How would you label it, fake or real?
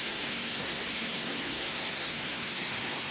fake